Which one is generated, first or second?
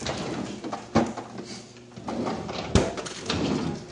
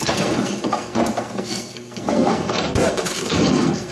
second